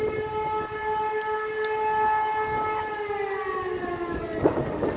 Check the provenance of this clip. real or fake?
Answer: real